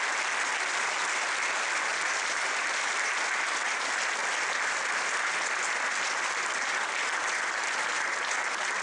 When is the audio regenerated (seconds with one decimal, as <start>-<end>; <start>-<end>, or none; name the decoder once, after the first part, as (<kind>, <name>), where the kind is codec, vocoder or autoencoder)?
none